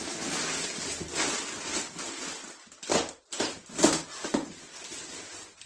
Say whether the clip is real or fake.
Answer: real